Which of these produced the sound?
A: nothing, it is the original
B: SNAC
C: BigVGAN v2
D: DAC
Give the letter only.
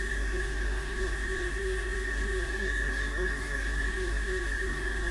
B